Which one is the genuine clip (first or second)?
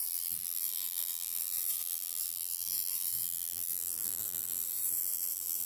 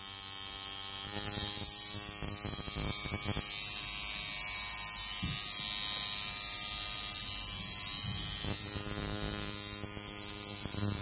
second